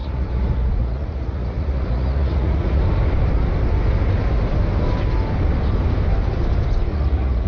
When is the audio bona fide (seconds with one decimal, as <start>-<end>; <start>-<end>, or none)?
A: 2.8-6.9